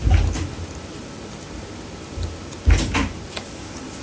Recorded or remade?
recorded